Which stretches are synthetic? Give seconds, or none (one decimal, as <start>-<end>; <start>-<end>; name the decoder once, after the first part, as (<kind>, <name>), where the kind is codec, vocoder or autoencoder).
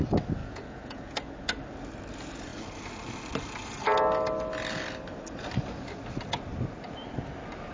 0.4-1.1 (vocoder, Vocos)